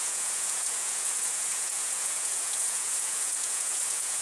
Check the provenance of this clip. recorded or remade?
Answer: remade